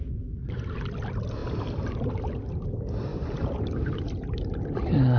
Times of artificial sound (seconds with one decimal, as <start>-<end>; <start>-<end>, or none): 3.1-4.6